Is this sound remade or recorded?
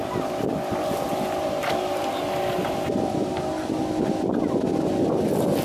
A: recorded